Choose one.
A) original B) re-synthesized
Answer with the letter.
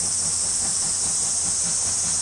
A